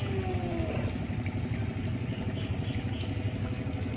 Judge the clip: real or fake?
real